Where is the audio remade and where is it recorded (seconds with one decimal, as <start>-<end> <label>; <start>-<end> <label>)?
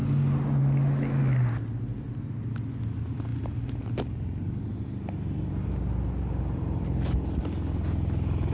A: 0.0-8.5 recorded